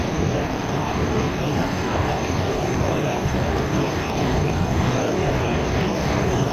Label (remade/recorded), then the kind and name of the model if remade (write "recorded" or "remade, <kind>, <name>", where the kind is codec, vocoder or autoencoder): remade, codec, DAC